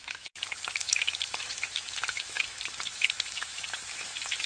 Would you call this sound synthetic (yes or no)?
yes